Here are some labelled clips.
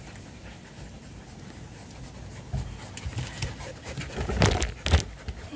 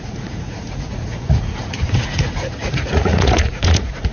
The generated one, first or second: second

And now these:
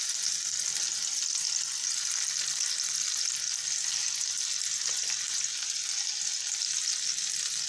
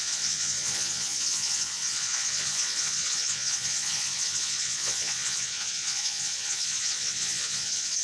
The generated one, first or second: second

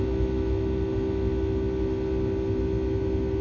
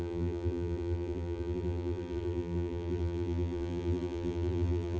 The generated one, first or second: second